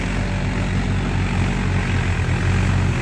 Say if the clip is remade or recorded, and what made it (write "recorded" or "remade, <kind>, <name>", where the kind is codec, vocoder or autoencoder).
recorded